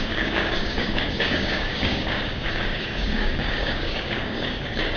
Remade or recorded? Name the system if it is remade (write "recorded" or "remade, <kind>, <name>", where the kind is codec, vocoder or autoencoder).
remade, codec, DAC